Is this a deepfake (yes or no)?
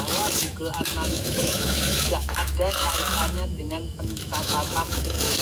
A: yes